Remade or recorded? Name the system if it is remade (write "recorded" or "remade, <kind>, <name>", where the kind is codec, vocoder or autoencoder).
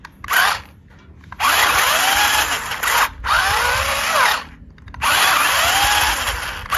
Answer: recorded